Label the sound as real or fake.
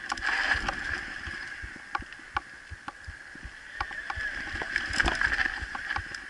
real